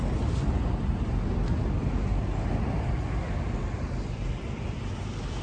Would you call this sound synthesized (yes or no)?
no